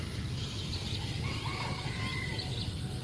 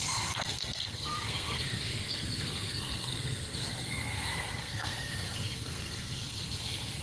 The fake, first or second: second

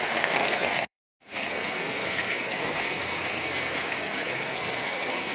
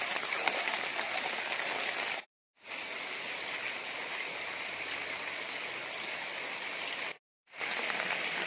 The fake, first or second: first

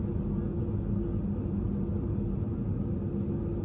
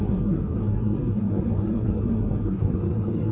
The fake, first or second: second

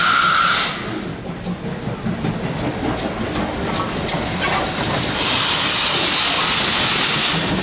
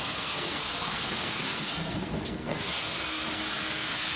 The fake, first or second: second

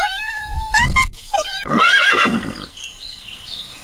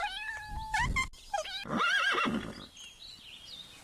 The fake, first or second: first